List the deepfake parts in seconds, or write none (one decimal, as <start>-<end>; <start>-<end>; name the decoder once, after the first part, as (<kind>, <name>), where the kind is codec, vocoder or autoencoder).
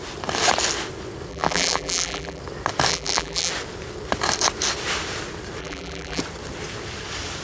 1.3-2.4 (vocoder, BigVGAN v2); 2.9-3.5; 5.6-6.2